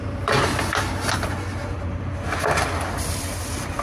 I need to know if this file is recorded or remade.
recorded